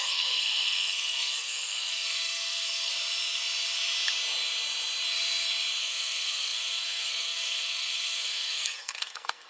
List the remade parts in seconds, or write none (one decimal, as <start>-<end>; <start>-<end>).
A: 0.0-2.9; 5.8-9.5